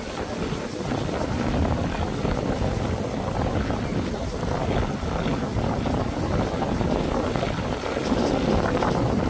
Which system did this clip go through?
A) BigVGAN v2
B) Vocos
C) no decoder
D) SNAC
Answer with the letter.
C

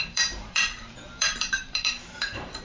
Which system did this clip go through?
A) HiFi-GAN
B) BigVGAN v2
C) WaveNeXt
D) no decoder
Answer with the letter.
B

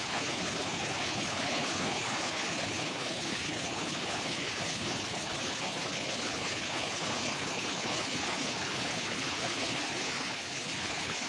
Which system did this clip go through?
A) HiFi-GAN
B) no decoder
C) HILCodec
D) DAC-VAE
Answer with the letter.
C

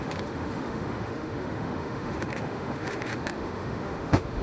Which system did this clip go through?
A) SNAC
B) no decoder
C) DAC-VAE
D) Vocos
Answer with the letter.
C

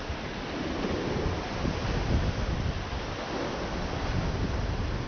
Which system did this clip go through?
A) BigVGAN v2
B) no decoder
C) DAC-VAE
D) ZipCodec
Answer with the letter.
B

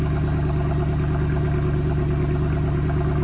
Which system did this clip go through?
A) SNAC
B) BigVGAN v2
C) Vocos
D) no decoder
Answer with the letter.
D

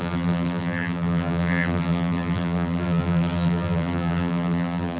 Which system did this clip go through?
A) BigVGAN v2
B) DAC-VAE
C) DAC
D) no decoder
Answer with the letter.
A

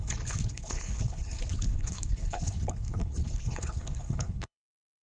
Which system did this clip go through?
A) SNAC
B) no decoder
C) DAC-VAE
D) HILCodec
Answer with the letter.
D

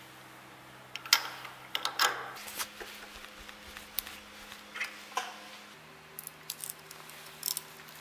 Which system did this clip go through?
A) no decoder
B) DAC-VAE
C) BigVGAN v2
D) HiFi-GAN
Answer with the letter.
A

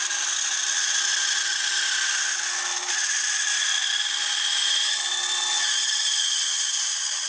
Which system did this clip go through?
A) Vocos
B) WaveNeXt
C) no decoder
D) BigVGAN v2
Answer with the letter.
C